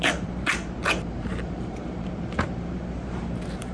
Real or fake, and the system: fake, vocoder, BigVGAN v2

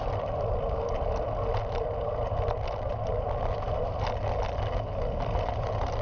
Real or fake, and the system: real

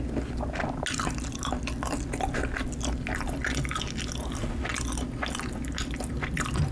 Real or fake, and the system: real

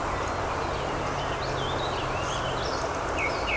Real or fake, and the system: real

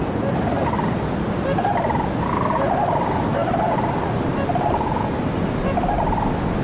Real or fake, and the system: real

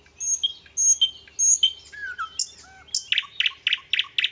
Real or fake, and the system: real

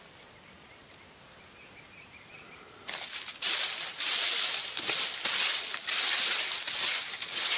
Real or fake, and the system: real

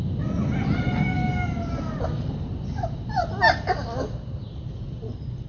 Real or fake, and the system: real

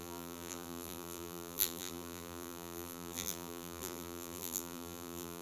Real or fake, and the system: fake, vocoder, BigVGAN v2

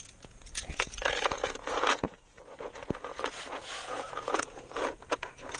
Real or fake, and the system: fake, vocoder, Vocos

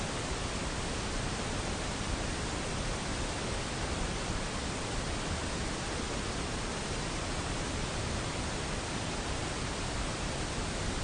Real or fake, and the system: real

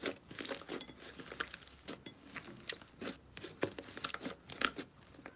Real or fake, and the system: real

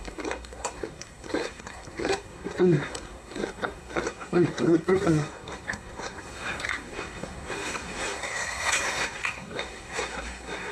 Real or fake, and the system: fake, codec, SNAC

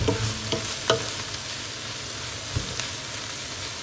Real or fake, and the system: real